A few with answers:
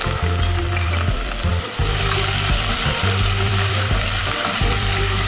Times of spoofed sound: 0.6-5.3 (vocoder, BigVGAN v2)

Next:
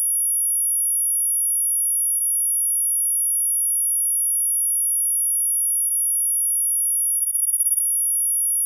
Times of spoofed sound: 7.2-7.8 (vocoder, BigVGAN v2)

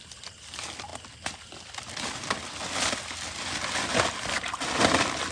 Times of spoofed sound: none

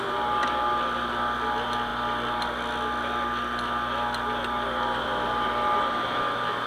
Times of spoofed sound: none

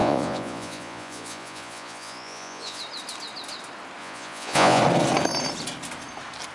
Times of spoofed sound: 0.0-2.8 (vocoder, Vocos); 4.0-4.8

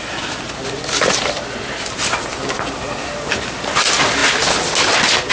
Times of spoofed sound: none

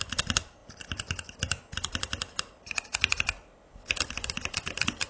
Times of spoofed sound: none